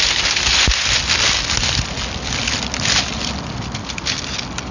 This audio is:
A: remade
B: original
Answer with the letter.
B